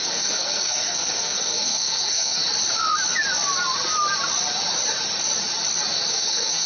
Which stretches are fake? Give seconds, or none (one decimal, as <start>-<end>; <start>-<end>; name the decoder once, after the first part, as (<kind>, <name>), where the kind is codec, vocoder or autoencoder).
0.0-2.4 (codec, SNAC); 6.1-6.7